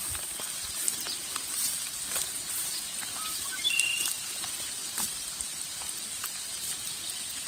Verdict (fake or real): real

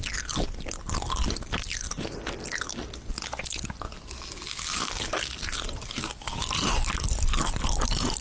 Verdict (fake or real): real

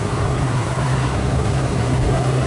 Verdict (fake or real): fake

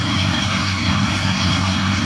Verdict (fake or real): fake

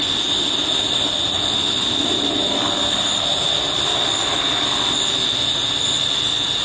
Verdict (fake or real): real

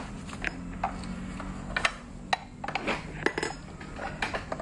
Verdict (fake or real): real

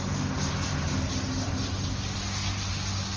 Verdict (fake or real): real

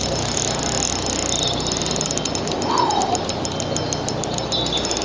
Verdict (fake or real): real